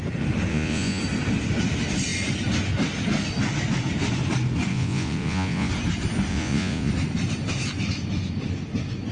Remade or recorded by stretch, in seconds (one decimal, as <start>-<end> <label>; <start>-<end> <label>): 0.0-0.5 recorded; 0.5-1.0 remade; 1.0-4.7 recorded; 4.7-5.7 remade; 5.7-6.3 recorded; 6.3-6.9 remade; 6.9-9.1 recorded